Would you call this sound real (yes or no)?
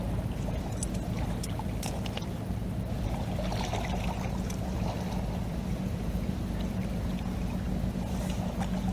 yes